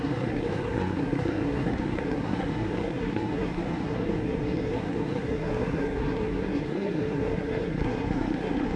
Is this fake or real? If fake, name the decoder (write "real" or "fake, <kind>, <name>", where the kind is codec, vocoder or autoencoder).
fake, codec, SNAC